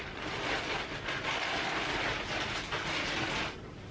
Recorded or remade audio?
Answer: recorded